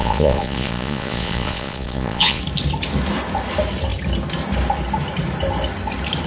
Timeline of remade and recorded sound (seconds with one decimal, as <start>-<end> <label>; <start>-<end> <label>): 0.0-2.4 remade; 2.4-6.3 recorded

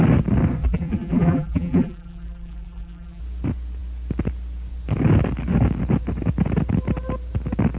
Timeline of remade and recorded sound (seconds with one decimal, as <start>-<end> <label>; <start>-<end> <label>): 0.0-0.6 recorded; 0.6-3.2 remade; 3.2-7.8 recorded